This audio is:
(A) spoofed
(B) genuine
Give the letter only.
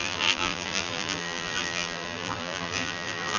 A